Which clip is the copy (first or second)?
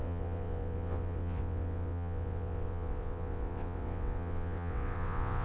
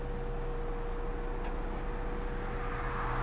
first